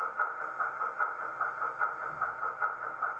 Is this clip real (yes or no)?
yes